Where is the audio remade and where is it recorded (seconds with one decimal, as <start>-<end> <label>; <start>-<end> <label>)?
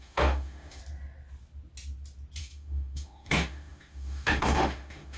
0.0-0.8 remade; 0.8-2.4 recorded; 2.4-5.2 remade